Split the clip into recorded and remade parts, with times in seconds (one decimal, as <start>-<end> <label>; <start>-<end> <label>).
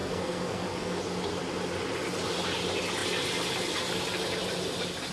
0.0-1.0 remade; 1.0-5.1 recorded